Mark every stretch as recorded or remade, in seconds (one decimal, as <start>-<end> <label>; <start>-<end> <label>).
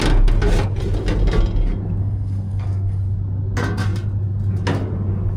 0.0-2.0 recorded; 2.0-3.0 remade; 3.0-5.4 recorded